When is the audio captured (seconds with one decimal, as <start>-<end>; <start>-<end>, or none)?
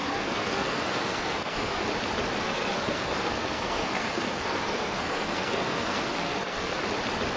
1.8-2.4; 6.8-7.4